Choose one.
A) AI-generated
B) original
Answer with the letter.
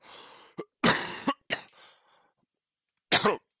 B